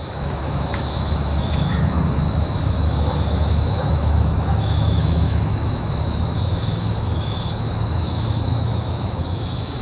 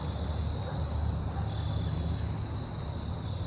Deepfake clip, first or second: first